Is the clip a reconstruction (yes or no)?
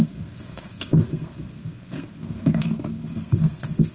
yes